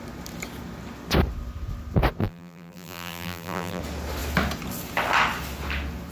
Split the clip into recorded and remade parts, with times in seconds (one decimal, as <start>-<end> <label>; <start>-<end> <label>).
0.0-2.2 recorded; 2.2-3.8 remade; 3.8-6.1 recorded